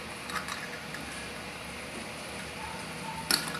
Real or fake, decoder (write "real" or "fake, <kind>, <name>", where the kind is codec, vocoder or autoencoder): real